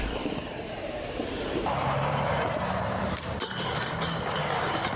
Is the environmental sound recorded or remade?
remade